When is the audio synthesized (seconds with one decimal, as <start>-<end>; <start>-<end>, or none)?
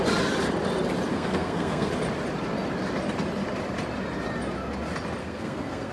1.1-1.9; 5.2-5.9